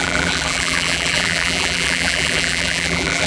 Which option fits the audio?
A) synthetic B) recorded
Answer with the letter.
A